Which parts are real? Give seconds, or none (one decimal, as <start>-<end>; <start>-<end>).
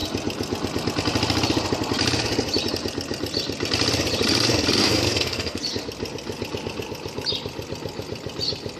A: 0.0-4.8; 5.6-8.8